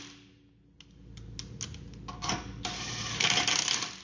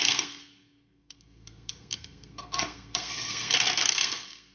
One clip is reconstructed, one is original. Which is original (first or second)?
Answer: first